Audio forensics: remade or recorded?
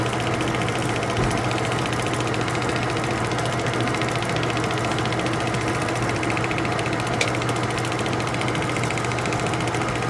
recorded